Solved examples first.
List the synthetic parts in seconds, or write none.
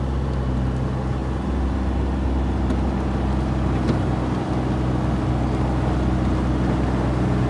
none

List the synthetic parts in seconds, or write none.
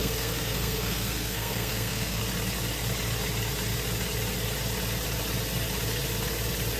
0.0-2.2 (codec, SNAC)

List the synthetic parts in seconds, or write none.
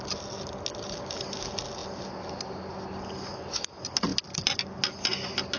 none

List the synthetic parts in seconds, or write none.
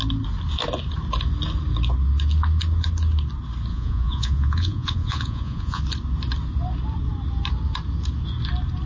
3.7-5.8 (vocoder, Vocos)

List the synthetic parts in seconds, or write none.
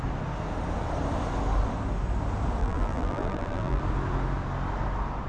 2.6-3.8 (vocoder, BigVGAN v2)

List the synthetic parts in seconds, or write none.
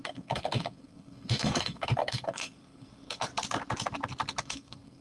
0.0-3.3 (codec, SNAC); 4.4-5.0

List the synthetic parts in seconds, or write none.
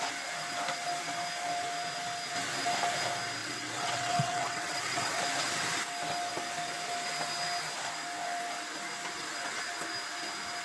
3.4-5.2 (vocoder, WaveNeXt)